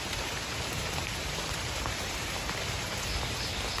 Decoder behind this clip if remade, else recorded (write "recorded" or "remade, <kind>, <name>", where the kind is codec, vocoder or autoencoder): remade, vocoder, BigVGAN v2